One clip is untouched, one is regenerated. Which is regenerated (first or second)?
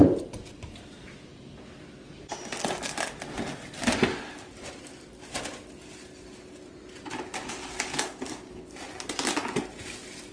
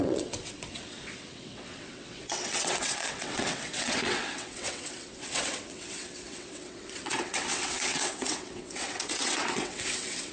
second